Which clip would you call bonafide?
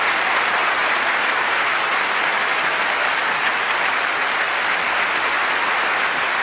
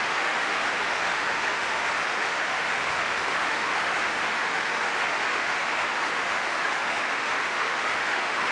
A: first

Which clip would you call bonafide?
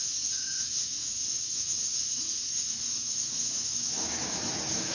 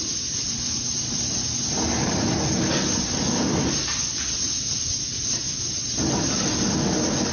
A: second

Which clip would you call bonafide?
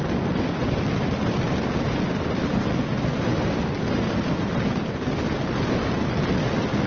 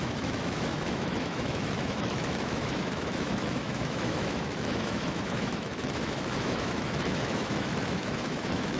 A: first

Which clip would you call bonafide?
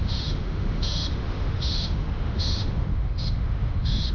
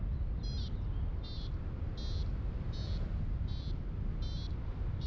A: second